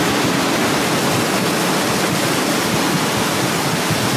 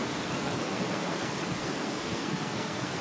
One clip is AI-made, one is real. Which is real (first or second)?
first